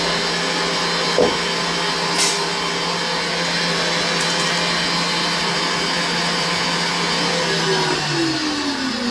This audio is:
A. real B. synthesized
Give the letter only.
A